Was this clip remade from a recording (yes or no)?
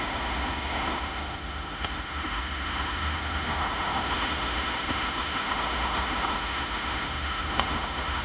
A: yes